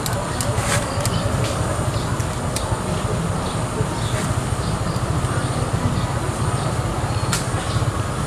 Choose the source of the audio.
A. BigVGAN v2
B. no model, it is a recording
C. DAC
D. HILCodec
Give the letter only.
B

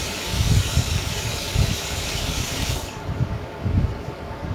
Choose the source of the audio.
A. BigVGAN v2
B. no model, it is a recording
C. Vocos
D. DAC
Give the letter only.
D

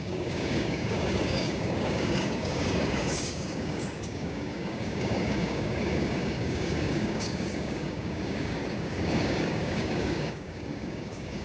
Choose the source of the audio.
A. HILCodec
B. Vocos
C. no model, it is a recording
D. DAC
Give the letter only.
D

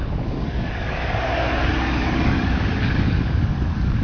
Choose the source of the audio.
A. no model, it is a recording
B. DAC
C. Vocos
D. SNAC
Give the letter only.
B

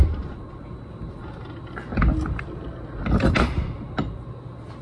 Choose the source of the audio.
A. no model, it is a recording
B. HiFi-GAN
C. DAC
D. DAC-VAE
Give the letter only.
A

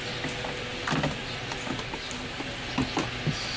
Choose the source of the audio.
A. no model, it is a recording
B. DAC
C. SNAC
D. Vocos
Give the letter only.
A